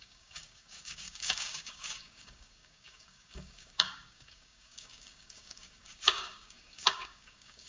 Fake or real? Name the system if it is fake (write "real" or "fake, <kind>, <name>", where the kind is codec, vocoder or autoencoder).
fake, codec, DAC